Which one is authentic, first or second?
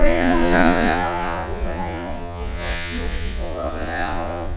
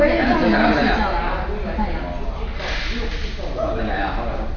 second